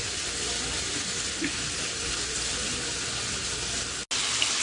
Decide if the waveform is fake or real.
real